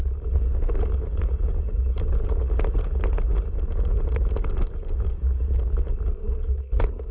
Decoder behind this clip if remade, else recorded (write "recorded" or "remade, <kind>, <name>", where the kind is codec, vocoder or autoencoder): recorded